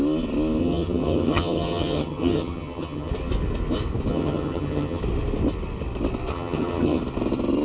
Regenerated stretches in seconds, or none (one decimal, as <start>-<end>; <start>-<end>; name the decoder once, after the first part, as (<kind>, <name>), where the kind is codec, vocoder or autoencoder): 0.6-3.1 (vocoder, HiFi-GAN); 4.1-5.0; 6.3-7.0

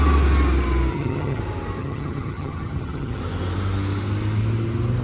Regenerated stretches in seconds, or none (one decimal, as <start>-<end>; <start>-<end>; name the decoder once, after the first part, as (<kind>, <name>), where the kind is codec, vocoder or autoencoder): 0.9-1.4 (vocoder, HiFi-GAN); 1.8-3.2